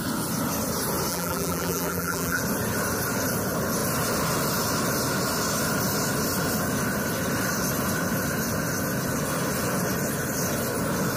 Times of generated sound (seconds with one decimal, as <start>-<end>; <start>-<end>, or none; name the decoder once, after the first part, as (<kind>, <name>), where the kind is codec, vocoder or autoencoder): 1.1-2.4 (vocoder, BigVGAN v2)